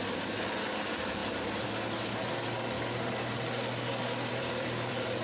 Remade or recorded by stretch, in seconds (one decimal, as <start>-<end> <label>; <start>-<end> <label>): 0.0-1.2 remade; 1.2-4.3 recorded; 4.3-5.2 remade

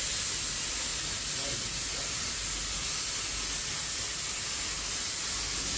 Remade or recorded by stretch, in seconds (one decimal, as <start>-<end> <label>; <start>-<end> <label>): 0.0-5.8 recorded

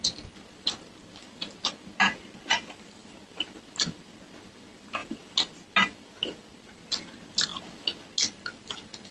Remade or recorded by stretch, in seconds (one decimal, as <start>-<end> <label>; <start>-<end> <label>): 0.0-9.1 recorded

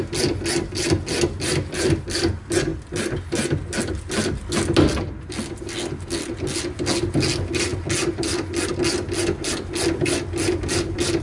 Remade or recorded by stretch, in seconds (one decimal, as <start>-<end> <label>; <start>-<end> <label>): 0.0-11.2 recorded

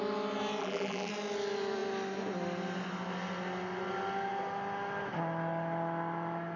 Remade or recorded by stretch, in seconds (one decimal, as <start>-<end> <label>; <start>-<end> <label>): 0.0-0.6 recorded; 0.6-1.1 remade; 1.1-6.6 recorded